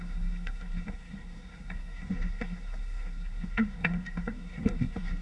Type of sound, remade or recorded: remade